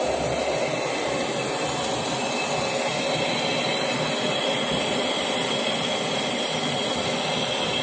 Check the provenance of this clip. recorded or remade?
recorded